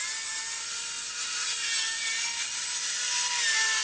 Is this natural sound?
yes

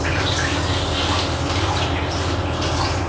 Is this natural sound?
yes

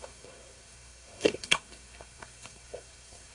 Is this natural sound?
no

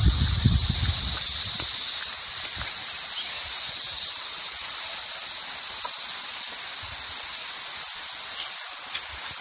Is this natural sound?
yes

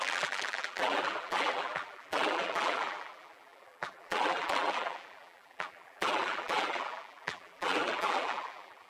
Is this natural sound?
no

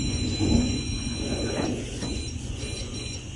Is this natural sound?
no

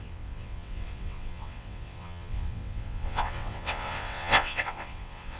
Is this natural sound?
no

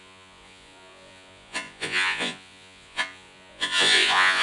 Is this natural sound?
no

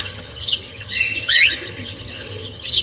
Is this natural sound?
no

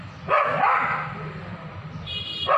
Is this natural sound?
yes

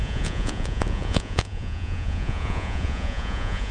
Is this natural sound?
no